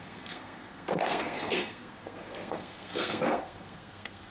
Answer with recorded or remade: remade